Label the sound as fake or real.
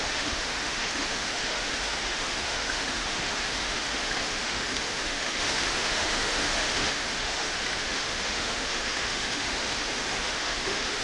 fake